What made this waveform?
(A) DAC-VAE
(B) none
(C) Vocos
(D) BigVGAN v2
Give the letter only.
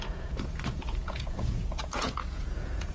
C